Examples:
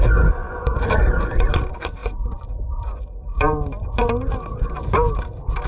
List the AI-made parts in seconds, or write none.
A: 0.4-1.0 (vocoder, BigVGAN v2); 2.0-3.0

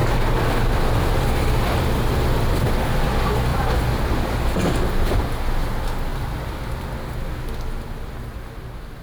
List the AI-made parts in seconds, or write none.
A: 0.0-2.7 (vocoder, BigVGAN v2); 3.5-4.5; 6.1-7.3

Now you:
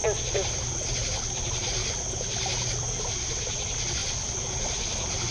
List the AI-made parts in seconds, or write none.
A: none

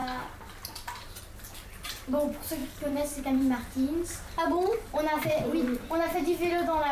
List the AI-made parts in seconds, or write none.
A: 2.6-6.9 (vocoder, BigVGAN v2)

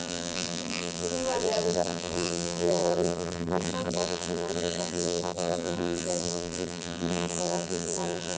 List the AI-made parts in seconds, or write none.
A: 0.0-8.4 (vocoder, BigVGAN v2)

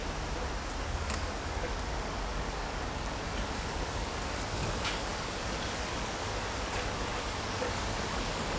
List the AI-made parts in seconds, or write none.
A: 0.8-8.6 (codec, DAC)

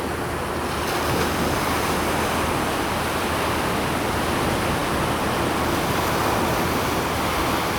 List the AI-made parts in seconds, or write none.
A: none